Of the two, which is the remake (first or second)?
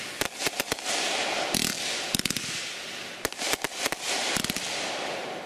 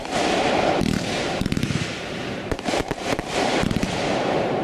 second